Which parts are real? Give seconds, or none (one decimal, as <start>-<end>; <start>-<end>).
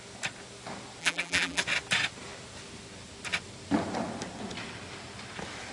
0.0-1.0; 1.6-5.7